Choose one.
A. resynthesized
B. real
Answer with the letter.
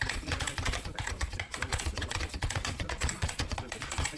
A